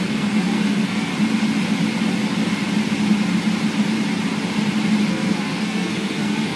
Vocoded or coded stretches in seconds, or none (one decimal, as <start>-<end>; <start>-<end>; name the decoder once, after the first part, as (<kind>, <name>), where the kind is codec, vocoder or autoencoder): 0.0-1.1 (codec, SNAC); 5.1-6.6